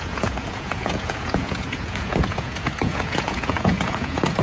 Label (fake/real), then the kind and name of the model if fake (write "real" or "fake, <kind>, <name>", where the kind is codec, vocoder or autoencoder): fake, vocoder, Vocos